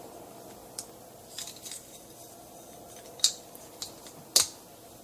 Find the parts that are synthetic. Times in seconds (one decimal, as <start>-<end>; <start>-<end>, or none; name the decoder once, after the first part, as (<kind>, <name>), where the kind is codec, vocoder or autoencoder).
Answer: none